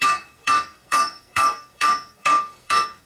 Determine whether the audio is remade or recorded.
remade